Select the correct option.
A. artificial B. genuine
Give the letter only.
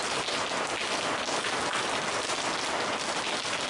B